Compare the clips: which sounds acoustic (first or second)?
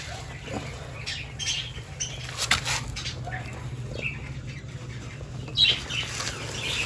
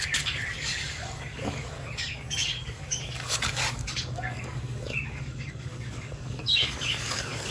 first